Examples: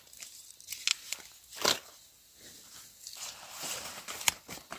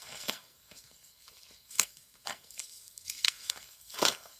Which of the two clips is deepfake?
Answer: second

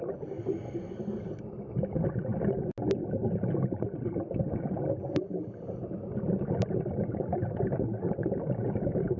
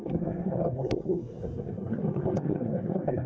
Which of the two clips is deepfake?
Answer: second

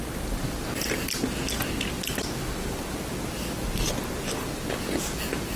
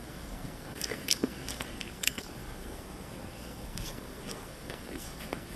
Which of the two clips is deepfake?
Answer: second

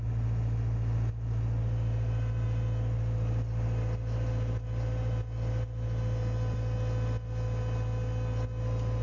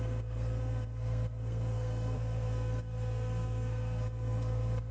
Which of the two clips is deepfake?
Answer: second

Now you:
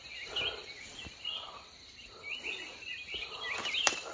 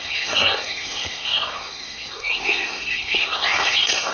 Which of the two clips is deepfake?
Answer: second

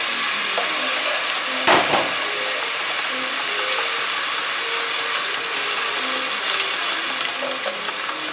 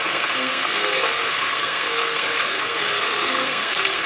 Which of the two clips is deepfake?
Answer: second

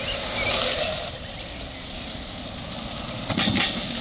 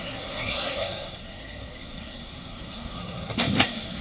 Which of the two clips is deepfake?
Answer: second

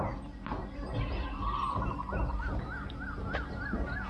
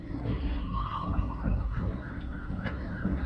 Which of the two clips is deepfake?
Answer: second